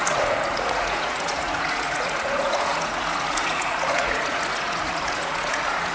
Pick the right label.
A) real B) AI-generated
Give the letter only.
B